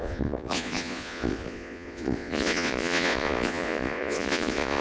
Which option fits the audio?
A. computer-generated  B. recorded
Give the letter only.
A